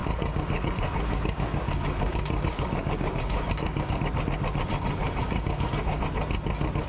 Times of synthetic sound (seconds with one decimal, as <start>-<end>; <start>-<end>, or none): 0.0-4.0; 5.0-6.0